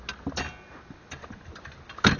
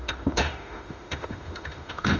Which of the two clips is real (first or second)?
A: first